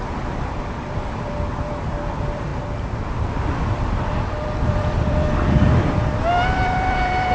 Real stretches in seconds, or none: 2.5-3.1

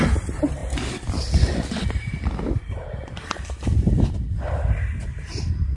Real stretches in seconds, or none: none